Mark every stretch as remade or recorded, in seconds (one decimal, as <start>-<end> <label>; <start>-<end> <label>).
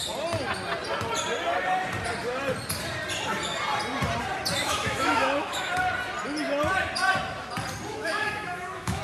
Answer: 0.0-4.6 recorded; 4.6-5.7 remade; 5.7-7.9 recorded; 7.9-9.0 remade